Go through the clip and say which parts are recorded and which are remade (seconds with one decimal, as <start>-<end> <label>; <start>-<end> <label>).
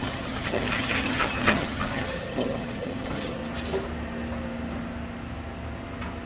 0.0-3.4 remade; 3.4-6.3 recorded